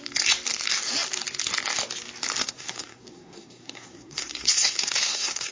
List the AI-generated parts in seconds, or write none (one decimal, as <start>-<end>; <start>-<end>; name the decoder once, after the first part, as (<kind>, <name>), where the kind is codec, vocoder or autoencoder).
2.4-5.5 (codec, SNAC)